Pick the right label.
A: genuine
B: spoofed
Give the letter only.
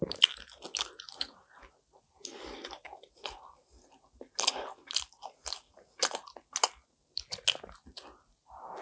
A